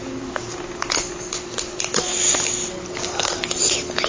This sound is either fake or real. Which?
real